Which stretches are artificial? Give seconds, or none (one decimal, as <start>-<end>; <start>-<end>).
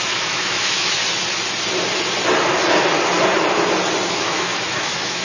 0.0-1.0; 4.1-5.2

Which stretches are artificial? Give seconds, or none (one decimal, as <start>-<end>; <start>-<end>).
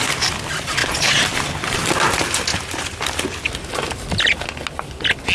none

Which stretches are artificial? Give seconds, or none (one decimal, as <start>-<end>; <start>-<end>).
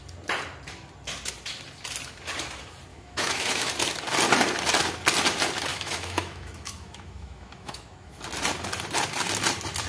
2.9-3.7; 5.7-8.2